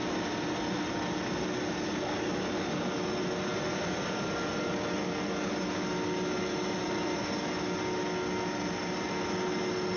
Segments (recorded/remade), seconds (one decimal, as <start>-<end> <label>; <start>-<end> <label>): 0.0-10.0 recorded